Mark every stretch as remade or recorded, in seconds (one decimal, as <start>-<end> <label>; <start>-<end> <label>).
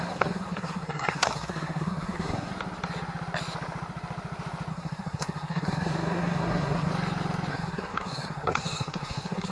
0.0-2.5 remade; 2.5-4.7 recorded; 4.7-6.9 remade; 6.9-7.5 recorded; 7.5-9.5 remade